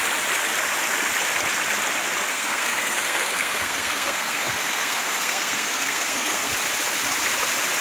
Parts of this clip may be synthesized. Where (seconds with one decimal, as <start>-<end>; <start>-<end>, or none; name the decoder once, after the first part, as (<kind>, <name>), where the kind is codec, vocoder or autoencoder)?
2.3-6.5 (codec, SNAC)